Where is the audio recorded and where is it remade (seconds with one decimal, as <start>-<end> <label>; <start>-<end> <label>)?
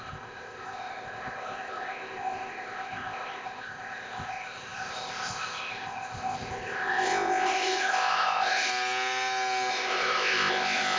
0.0-8.7 remade; 8.7-9.7 recorded; 9.7-11.0 remade